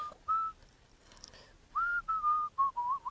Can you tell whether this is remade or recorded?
recorded